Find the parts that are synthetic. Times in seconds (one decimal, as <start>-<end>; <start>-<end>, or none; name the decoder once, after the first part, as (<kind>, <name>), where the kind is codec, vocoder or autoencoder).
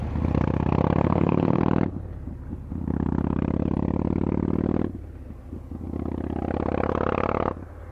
1.0-1.6 (codec, SNAC)